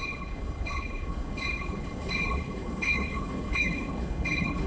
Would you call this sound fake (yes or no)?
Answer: yes